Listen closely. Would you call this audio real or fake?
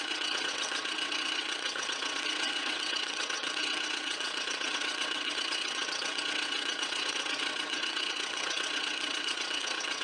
fake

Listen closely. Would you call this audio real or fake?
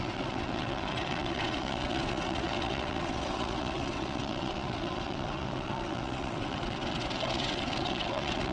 fake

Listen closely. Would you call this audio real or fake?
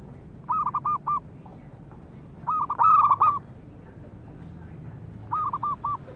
real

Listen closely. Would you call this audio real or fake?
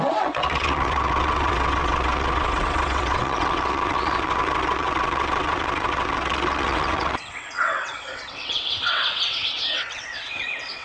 fake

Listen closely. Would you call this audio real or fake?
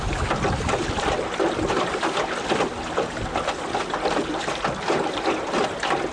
real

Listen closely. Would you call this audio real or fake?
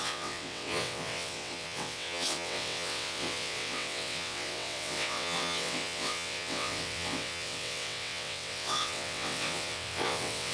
fake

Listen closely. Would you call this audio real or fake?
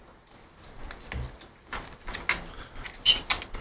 real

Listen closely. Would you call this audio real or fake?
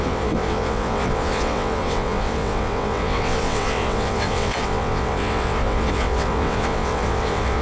fake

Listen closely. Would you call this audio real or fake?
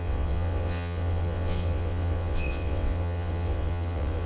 fake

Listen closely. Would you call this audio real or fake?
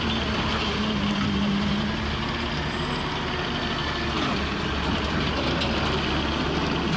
real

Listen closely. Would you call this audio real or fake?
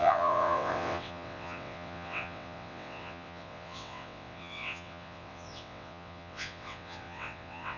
fake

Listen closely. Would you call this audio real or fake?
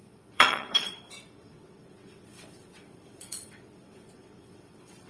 fake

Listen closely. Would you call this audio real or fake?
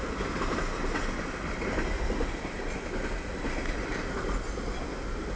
real